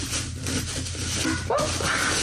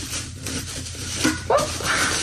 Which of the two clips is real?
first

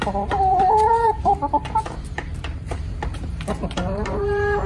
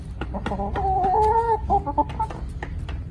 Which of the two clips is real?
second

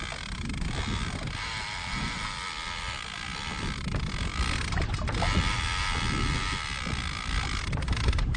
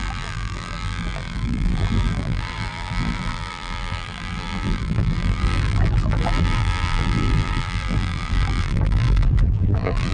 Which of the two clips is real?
first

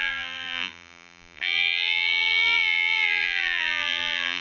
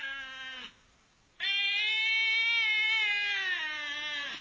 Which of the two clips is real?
second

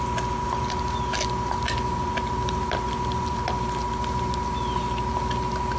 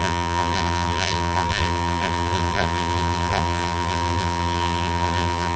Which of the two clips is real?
first